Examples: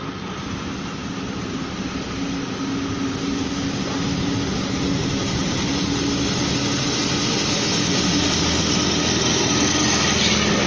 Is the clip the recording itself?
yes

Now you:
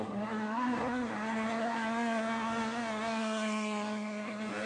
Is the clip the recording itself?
no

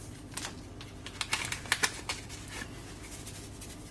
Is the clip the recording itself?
yes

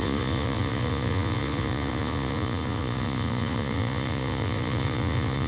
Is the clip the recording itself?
no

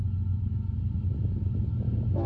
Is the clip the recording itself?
yes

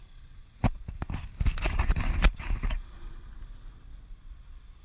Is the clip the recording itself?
yes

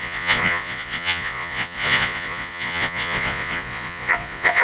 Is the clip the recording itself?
no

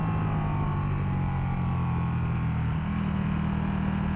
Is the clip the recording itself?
yes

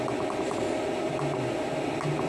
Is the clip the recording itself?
yes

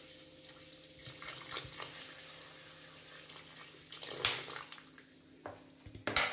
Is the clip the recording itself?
yes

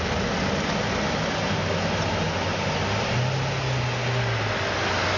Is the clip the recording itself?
yes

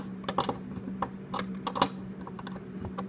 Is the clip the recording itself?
yes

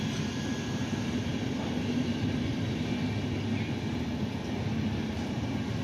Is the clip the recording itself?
yes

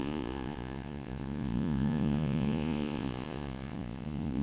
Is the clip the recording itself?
no